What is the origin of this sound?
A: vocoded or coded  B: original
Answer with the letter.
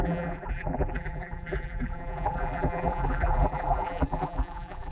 A